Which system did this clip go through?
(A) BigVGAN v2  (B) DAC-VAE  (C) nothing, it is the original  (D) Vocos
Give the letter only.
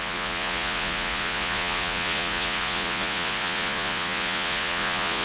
D